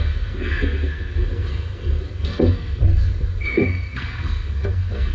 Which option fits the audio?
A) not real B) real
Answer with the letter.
A